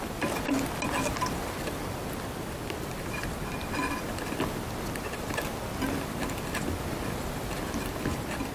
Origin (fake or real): real